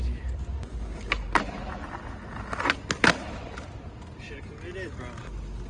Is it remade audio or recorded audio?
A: recorded